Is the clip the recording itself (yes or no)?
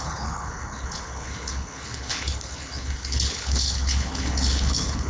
no